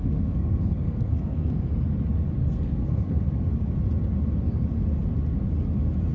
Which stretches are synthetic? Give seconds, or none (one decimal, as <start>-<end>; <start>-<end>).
0.0-1.7; 2.4-3.2